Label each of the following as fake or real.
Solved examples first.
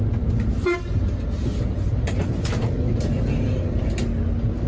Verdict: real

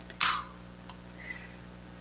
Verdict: real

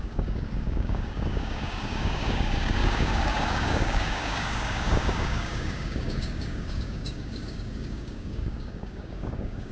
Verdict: fake